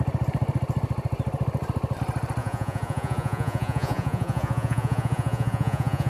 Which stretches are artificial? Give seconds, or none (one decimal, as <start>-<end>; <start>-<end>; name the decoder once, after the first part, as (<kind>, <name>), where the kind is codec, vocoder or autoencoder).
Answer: 2.4-6.1 (vocoder, Vocos)